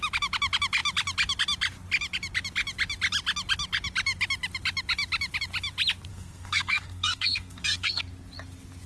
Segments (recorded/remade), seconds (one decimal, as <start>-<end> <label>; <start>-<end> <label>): 0.0-6.1 recorded; 6.1-8.0 remade; 8.0-8.9 recorded